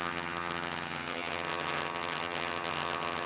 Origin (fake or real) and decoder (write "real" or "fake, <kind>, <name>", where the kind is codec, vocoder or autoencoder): fake, vocoder, HiFi-GAN